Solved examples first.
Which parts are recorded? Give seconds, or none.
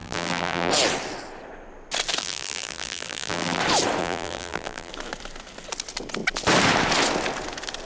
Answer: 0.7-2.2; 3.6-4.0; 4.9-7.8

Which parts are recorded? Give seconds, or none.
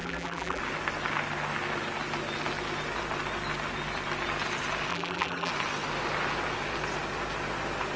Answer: 0.6-4.9; 5.5-8.0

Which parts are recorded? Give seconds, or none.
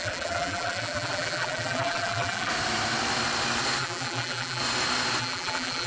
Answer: 2.5-3.8; 4.6-5.2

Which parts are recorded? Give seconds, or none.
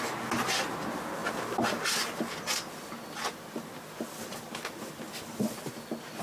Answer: 0.0-6.2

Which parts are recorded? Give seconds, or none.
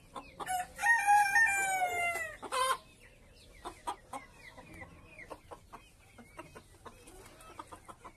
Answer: 0.0-8.2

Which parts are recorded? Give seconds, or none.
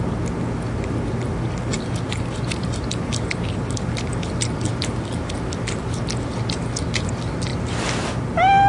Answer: 0.0-8.7